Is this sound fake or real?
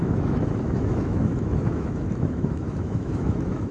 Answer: fake